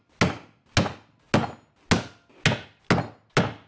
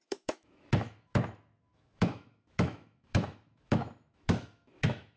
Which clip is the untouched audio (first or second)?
first